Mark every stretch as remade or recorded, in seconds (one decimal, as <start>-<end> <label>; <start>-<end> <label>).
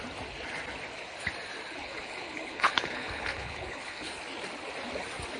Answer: 0.0-1.8 recorded; 1.8-4.1 remade; 4.1-5.4 recorded